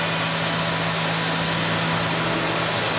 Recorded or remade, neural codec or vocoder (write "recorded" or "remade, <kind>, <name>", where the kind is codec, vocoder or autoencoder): recorded